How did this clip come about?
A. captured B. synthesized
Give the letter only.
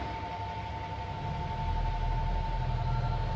A